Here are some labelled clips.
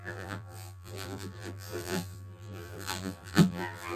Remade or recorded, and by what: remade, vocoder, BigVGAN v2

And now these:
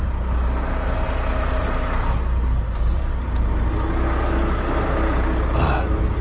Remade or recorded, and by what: recorded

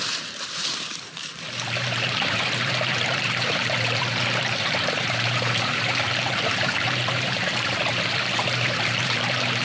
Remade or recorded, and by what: remade, vocoder, BigVGAN v2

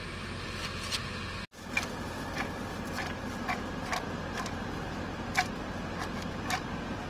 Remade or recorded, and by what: recorded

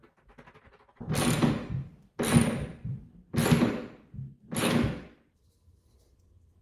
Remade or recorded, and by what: recorded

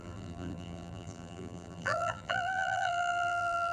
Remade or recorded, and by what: remade, vocoder, BigVGAN v2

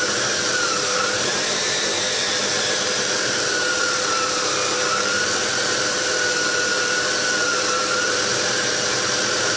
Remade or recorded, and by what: remade, vocoder, BigVGAN v2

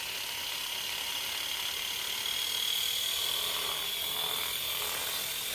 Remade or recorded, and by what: recorded